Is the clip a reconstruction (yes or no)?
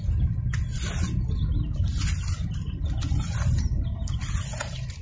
no